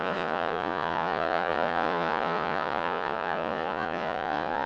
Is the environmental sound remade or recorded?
remade